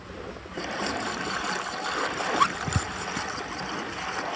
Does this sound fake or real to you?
real